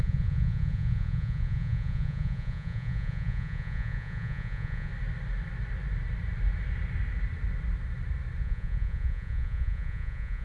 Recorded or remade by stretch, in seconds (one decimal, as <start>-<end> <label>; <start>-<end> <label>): 0.0-4.9 remade; 4.9-8.4 recorded; 8.4-10.4 remade